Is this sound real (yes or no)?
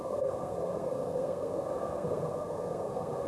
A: no